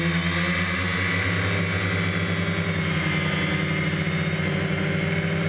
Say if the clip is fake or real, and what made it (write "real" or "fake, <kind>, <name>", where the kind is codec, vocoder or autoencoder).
real